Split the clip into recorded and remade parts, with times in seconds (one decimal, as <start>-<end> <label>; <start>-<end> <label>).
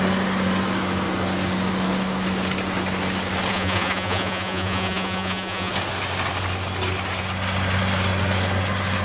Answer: 0.0-3.5 recorded; 3.5-5.7 remade; 5.7-9.0 recorded